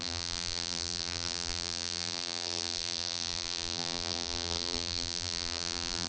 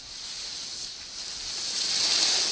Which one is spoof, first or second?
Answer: first